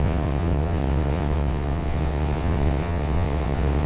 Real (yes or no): no